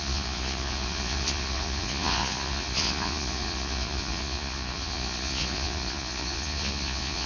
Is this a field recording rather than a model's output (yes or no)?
no